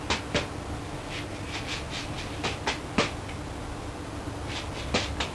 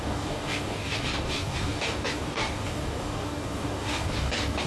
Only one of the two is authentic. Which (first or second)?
first